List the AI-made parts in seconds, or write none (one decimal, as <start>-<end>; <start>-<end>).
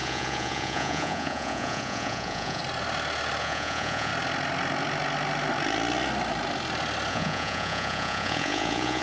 0.0-2.6; 3.4-4.1; 7.1-9.0